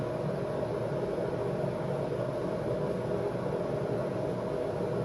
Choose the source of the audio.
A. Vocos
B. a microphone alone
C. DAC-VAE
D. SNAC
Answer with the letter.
B